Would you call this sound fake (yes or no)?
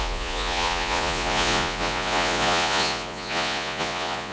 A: yes